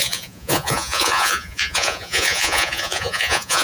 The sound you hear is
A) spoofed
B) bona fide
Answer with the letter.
A